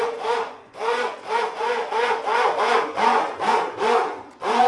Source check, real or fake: fake